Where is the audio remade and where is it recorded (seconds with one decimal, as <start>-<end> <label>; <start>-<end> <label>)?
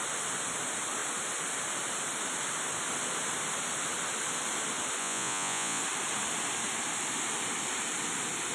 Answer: 0.0-5.0 recorded; 5.0-5.8 remade; 5.8-8.5 recorded